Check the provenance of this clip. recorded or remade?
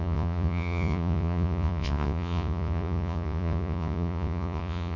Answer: remade